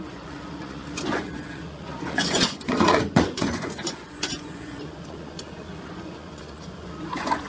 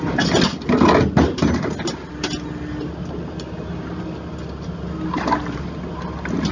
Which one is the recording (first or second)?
second